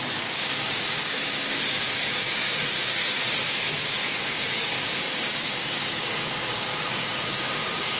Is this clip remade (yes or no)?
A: yes